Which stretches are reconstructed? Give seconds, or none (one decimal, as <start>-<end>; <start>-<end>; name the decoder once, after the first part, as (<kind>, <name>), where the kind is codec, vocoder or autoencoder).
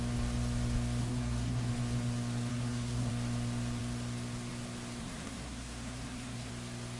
1.0-1.7 (codec, SNAC); 2.5-3.1; 5.0-6.5